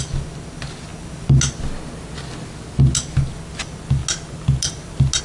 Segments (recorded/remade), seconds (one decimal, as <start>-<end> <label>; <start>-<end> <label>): 0.0-5.2 recorded